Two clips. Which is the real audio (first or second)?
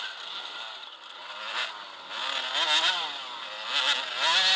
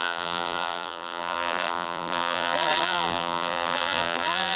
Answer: first